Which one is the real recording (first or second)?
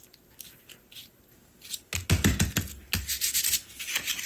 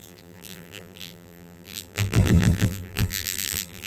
first